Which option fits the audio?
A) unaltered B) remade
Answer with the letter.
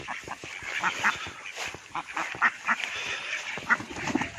A